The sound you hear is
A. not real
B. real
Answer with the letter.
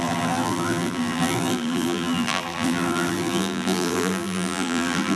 A